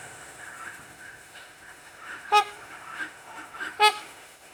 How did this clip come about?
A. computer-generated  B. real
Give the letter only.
A